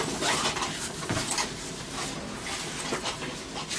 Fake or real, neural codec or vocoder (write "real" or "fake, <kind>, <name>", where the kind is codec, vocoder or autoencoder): real